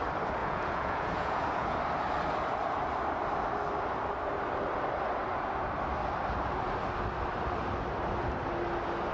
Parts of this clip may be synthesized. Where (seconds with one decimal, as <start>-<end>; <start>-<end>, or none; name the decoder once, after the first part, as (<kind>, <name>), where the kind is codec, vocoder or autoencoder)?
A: 0.4-1.8 (vocoder, Vocos)